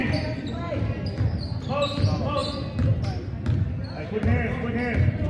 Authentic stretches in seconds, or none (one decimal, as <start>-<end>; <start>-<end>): 0.0-5.3